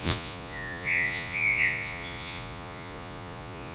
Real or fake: fake